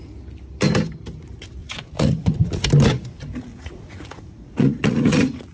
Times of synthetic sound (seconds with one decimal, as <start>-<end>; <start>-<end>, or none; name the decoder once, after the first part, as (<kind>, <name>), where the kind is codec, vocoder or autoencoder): 1.6-2.5 (vocoder, Vocos); 3.5-5.5